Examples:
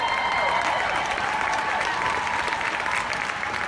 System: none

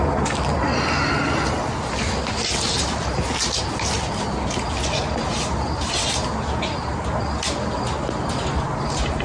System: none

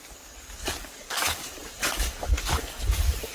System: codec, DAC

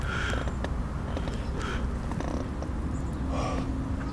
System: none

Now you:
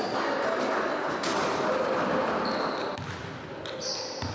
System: none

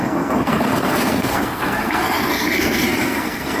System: codec, SNAC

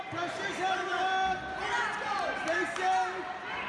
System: none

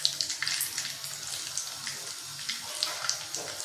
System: none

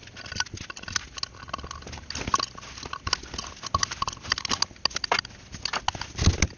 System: none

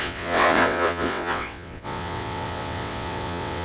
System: vocoder, WaveNeXt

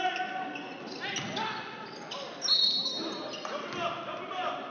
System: none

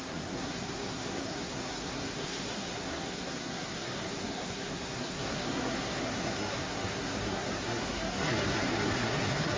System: codec, SNAC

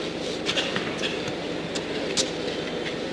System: none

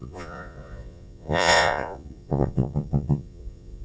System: vocoder, Vocos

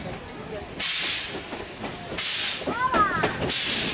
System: none